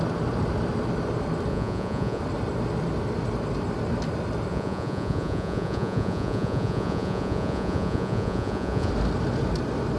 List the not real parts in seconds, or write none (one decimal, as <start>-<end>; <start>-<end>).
1.5-2.2; 4.5-8.9